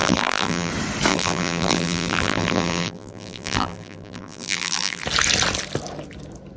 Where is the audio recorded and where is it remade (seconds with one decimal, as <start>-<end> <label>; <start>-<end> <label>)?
0.0-0.7 remade; 0.7-1.1 recorded; 1.1-5.0 remade; 5.0-6.6 recorded